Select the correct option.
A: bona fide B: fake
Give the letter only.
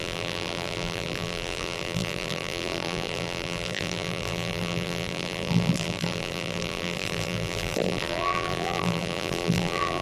B